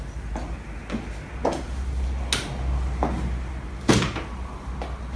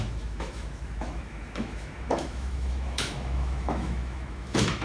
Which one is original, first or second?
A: first